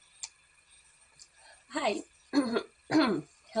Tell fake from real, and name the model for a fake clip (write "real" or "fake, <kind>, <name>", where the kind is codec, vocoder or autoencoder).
real